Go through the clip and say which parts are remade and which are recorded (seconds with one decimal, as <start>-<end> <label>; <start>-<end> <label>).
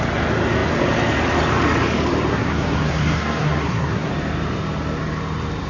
0.0-2.3 recorded; 2.3-4.1 remade; 4.1-5.7 recorded